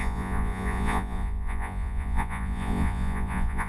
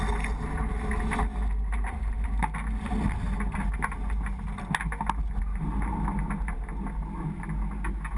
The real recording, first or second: second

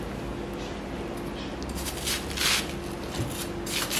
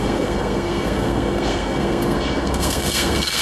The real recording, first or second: first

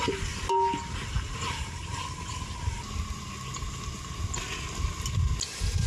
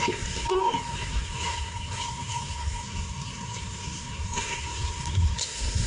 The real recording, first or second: first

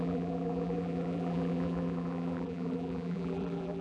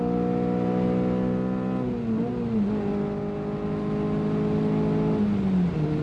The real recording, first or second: second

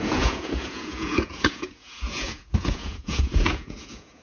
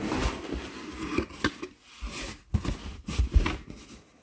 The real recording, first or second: second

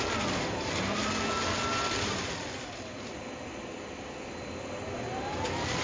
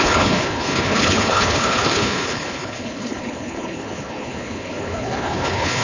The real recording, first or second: first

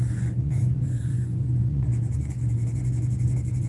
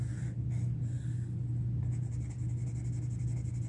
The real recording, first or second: second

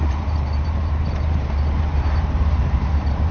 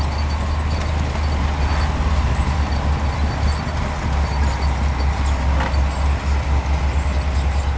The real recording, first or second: second